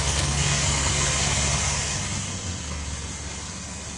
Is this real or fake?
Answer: fake